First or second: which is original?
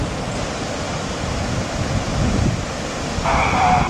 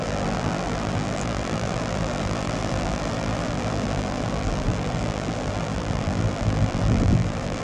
first